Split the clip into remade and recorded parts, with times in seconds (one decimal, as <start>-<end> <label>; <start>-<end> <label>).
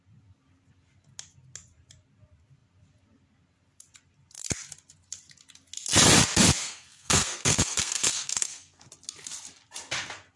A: 0.0-6.6 recorded; 6.6-8.9 remade; 8.9-10.4 recorded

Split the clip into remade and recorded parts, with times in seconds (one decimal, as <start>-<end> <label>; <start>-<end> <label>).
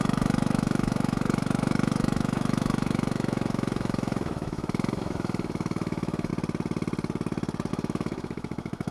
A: 0.0-6.3 remade; 6.3-7.7 recorded; 7.7-8.9 remade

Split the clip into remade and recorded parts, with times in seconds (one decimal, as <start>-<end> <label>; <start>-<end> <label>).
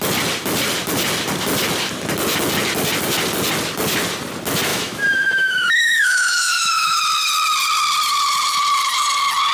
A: 0.0-4.7 recorded; 4.7-7.0 remade; 7.0-9.5 recorded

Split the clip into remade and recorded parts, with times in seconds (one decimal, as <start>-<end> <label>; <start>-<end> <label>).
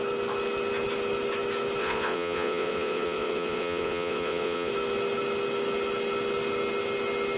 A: 0.0-1.8 recorded; 1.8-4.7 remade; 4.7-7.4 recorded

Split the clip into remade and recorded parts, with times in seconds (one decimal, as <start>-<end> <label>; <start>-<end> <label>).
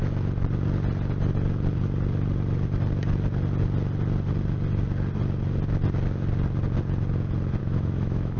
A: 0.0-7.6 recorded; 7.6-8.4 remade